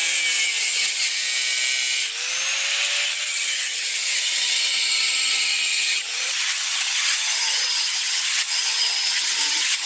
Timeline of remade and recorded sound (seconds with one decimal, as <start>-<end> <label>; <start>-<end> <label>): 0.0-0.6 recorded; 0.6-1.2 remade; 1.2-3.1 recorded; 3.1-9.9 remade